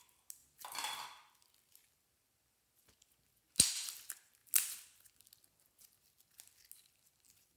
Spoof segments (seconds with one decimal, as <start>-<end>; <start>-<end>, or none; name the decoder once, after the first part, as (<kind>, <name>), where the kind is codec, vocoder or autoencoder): none